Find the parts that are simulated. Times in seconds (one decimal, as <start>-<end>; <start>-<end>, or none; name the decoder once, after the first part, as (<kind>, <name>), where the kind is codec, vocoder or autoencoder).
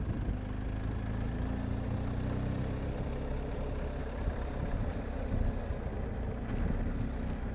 4.0-5.0 (vocoder, BigVGAN v2)